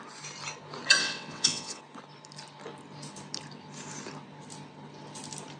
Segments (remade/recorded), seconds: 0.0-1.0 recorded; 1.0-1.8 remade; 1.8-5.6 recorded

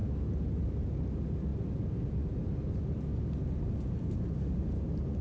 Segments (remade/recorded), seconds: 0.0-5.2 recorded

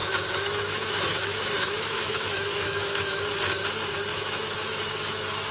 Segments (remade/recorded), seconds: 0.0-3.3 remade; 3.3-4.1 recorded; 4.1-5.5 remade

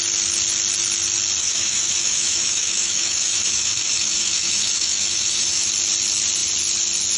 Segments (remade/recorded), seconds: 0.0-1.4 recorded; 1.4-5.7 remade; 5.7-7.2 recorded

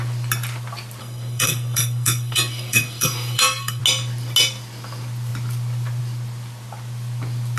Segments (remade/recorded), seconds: 0.0-1.0 recorded; 1.0-3.8 remade; 3.8-7.6 recorded

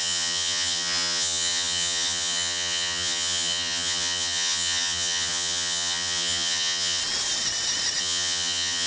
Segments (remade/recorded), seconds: 0.0-7.0 remade; 7.0-8.0 recorded; 8.0-8.9 remade

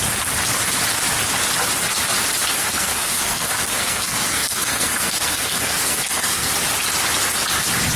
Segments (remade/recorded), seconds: 0.0-2.6 recorded; 2.6-6.5 remade; 6.5-8.0 recorded

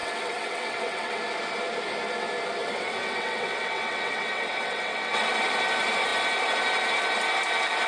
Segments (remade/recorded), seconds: 0.0-1.2 remade; 1.2-2.6 recorded; 2.6-5.3 remade; 5.3-7.9 recorded